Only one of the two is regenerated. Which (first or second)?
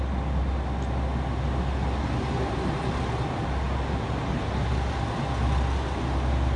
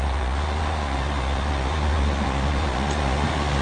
second